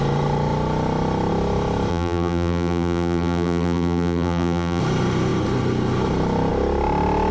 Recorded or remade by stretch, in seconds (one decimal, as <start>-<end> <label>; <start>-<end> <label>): 0.0-1.9 recorded; 1.9-4.8 remade; 4.8-7.3 recorded